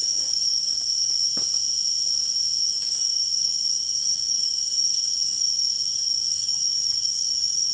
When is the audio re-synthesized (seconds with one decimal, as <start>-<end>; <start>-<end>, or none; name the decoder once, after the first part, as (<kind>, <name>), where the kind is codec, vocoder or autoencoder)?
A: 0.0-1.3 (codec, DAC); 2.6-7.7